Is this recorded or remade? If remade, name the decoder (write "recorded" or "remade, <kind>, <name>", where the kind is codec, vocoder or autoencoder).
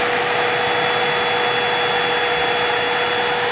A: recorded